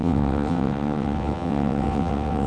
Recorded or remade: remade